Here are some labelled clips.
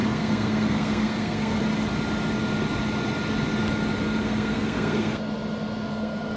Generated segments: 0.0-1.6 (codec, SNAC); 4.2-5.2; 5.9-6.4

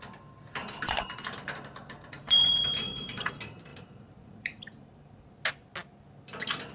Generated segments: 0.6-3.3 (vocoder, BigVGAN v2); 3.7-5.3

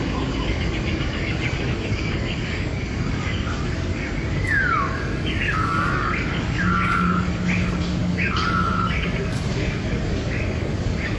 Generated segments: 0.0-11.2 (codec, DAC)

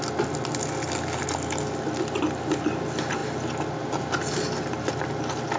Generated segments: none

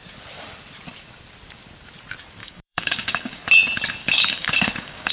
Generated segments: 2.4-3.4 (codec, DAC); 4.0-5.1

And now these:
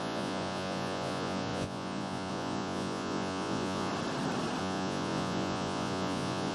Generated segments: 0.0-3.9 (vocoder, Vocos); 4.6-6.5